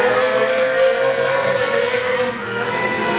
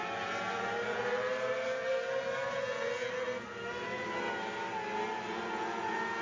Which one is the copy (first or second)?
first